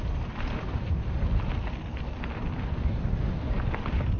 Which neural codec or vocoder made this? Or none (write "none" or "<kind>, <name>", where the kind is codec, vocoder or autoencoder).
none